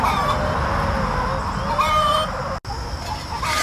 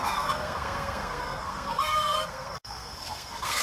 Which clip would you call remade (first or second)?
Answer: second